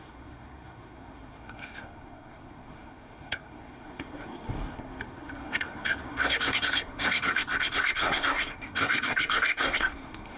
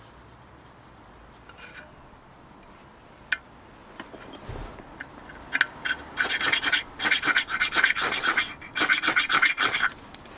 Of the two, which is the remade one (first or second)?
first